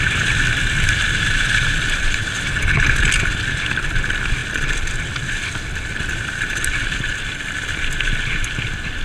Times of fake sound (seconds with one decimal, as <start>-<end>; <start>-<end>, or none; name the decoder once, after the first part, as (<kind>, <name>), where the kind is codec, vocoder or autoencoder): none